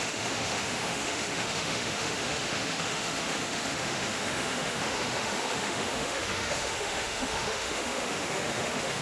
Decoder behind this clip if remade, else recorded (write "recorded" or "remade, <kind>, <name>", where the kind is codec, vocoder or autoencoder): remade, autoencoder, DAC-VAE